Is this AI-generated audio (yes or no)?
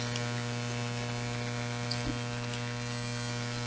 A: no